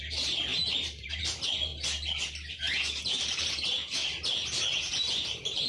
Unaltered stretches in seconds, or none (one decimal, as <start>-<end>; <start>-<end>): 1.7-3.0; 4.0-5.1